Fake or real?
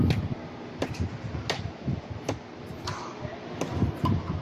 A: real